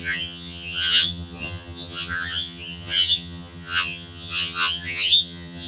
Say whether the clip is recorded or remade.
remade